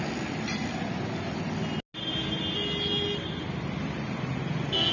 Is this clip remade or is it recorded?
recorded